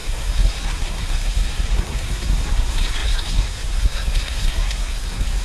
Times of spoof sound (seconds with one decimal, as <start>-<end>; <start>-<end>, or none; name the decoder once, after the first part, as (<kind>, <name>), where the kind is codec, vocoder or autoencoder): 0.0-5.4 (codec, SNAC)

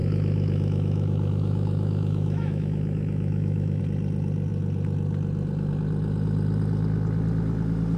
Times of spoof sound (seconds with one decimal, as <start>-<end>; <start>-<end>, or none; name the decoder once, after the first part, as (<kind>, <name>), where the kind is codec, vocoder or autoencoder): 0.0-3.8 (autoencoder, DAC-VAE)